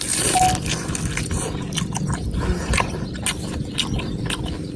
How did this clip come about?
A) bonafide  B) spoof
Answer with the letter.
A